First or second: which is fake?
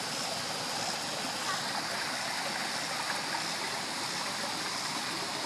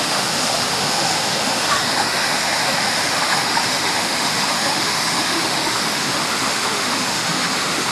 second